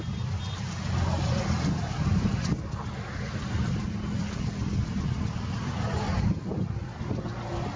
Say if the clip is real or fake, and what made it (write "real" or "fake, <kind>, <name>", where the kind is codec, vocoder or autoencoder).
real